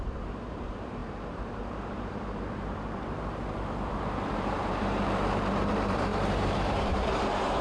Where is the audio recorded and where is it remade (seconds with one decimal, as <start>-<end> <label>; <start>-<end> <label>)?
0.0-7.6 remade